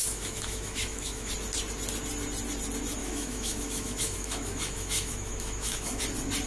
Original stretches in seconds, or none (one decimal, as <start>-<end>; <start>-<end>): 1.3-3.0; 6.0-6.5